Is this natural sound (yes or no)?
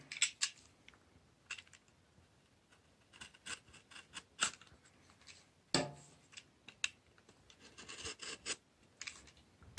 yes